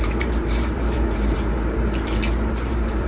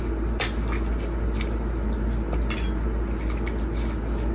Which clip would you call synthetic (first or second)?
first